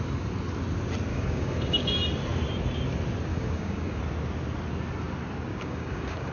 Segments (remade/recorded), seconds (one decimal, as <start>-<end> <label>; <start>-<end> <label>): 0.0-1.1 recorded; 1.1-1.9 remade; 1.9-3.3 recorded; 3.3-4.0 remade; 4.0-5.5 recorded; 5.5-6.3 remade